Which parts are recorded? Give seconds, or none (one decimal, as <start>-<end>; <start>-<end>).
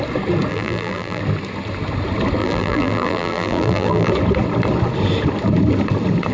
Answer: 0.0-0.5; 1.2-2.4; 4.1-6.3